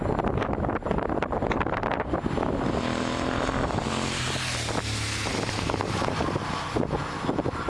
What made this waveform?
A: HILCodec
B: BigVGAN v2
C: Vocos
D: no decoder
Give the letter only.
D